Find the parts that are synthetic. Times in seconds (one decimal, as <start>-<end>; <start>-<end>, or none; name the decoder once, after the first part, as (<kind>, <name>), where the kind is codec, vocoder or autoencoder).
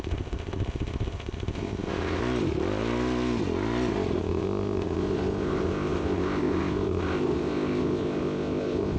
0.0-2.2 (codec, ZipCodec); 4.2-9.0